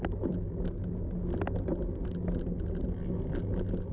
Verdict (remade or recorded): recorded